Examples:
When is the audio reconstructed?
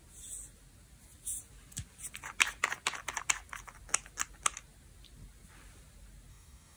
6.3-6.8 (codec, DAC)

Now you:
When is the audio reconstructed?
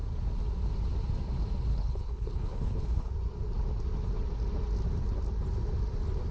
1.7-3.1 (codec, HILCodec)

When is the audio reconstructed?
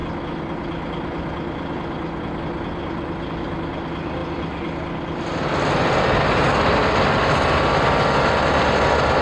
none